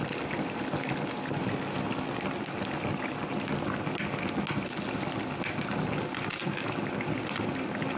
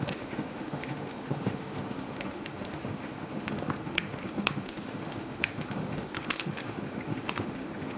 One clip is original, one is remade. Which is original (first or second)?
first